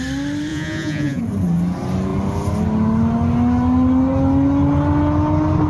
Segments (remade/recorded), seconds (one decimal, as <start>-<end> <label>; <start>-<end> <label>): 0.0-0.5 recorded; 0.5-1.2 remade; 1.2-5.7 recorded